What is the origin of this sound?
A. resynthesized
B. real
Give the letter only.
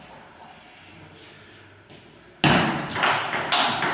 B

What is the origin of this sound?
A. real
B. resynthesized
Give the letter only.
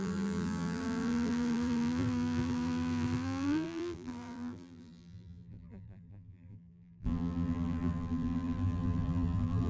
B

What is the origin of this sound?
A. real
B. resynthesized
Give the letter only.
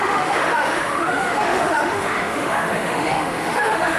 B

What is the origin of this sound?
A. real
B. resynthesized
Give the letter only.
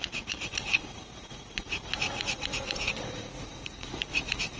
B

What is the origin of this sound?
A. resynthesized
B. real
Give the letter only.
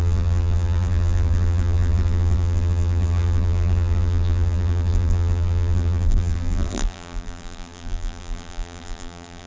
A